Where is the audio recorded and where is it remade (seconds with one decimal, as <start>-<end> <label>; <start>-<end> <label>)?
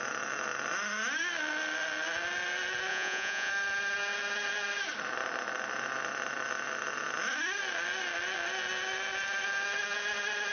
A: 0.0-2.9 recorded; 2.9-3.5 remade; 3.5-10.5 recorded